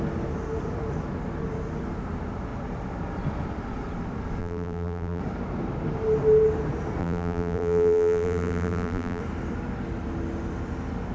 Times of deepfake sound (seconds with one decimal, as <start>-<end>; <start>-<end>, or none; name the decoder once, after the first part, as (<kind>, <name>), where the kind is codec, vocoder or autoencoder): 4.4-5.2 (vocoder, BigVGAN v2); 7.0-9.2